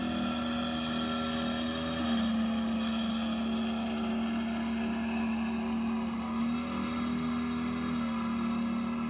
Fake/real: real